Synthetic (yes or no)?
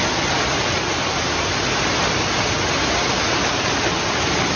no